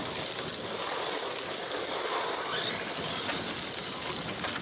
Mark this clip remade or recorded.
recorded